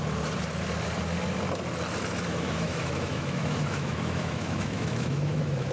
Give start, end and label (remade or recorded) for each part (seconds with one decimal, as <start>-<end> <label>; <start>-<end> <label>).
0.0-2.3 recorded; 2.3-5.7 remade